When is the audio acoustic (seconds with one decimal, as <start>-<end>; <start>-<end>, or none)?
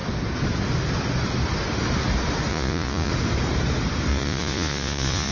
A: 0.0-2.5; 3.1-4.1